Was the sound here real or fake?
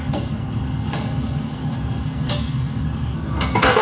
fake